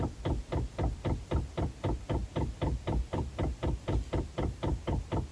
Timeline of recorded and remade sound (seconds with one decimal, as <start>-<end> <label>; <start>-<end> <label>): 0.0-2.2 recorded; 2.2-3.5 remade; 3.5-5.3 recorded